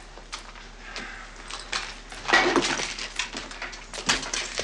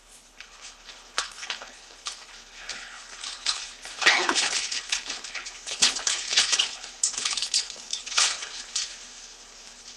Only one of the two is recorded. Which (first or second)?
first